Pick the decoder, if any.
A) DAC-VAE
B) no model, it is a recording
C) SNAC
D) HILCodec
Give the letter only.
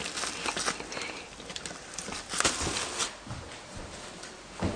B